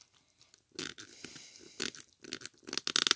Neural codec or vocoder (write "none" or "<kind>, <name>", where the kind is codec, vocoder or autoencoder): none